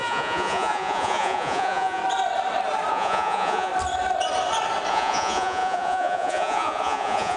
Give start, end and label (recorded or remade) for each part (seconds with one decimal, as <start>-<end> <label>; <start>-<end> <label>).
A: 0.0-2.0 remade; 2.0-2.9 recorded; 2.9-3.7 remade; 3.7-4.9 recorded; 4.9-7.4 remade